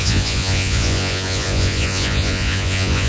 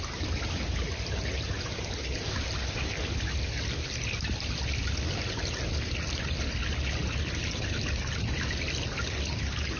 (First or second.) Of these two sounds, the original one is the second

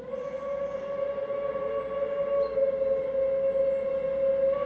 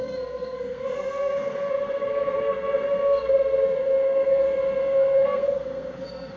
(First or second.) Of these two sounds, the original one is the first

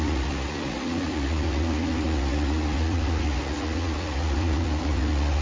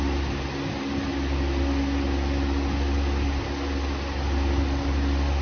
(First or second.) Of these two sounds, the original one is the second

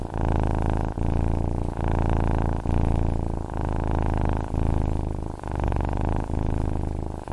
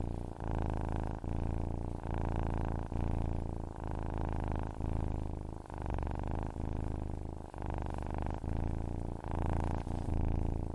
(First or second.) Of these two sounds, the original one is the second